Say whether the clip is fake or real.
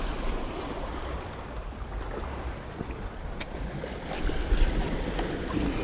fake